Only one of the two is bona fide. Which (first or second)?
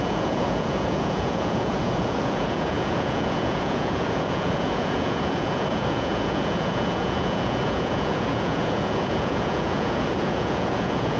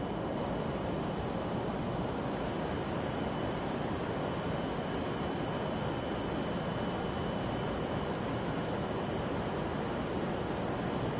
second